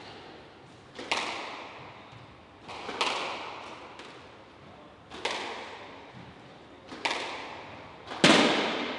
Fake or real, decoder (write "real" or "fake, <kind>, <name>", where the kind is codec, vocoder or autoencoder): real